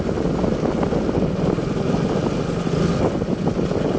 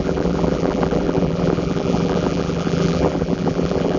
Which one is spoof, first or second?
second